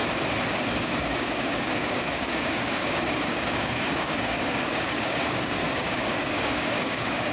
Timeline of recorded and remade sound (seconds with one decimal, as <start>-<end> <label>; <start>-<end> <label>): 0.0-0.8 recorded; 0.8-7.3 remade